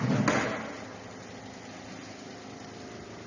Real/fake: real